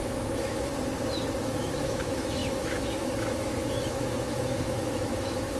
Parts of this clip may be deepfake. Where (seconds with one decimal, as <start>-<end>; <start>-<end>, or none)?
0.0-0.7; 1.4-5.6